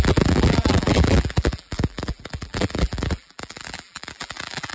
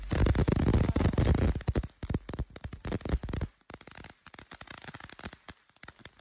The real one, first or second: second